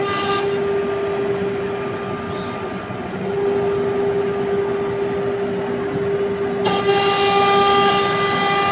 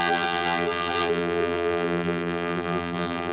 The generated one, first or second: second